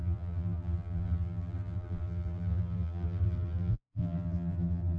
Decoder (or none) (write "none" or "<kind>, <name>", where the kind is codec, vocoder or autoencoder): vocoder, BigVGAN v2